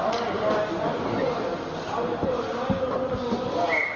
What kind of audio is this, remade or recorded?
recorded